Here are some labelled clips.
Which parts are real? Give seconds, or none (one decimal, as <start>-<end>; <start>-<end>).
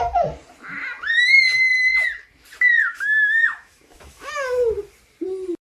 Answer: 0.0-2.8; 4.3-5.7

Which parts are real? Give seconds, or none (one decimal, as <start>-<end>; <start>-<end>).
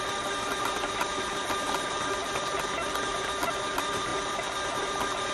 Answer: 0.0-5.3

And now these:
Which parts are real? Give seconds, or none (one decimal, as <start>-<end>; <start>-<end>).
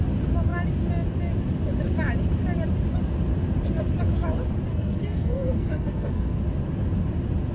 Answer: 0.0-4.7; 6.4-7.5